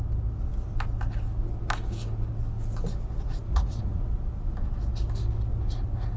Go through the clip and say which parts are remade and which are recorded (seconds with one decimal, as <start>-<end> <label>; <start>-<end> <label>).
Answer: 0.0-3.5 recorded; 3.5-4.1 remade; 4.1-6.2 recorded